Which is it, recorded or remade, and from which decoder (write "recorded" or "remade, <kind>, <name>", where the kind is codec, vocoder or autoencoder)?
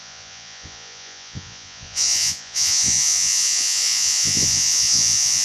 remade, vocoder, Vocos